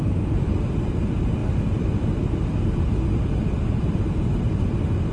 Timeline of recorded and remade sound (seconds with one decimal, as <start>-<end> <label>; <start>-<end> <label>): 0.0-1.4 remade; 1.4-3.7 recorded; 3.7-5.1 remade